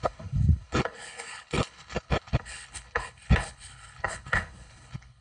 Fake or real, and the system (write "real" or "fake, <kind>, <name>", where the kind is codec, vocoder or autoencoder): fake, codec, HILCodec